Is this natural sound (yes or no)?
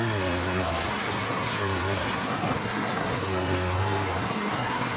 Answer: no